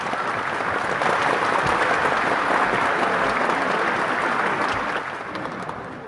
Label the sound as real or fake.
real